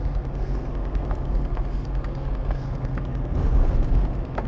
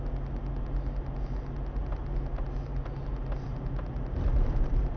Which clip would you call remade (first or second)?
first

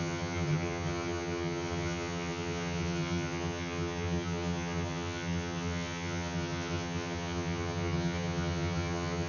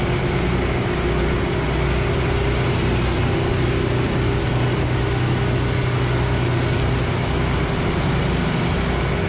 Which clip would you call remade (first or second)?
first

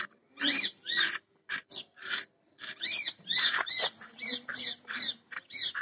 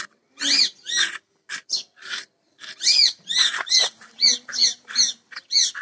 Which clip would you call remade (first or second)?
first